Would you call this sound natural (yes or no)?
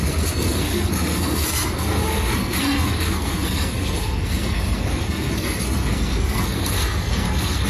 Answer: no